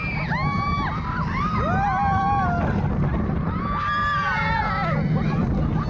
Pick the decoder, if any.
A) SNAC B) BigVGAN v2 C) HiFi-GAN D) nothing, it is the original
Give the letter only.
D